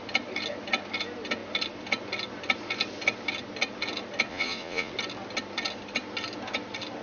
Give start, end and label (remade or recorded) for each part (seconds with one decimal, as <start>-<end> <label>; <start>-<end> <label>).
0.0-4.3 recorded; 4.3-4.9 remade; 4.9-7.0 recorded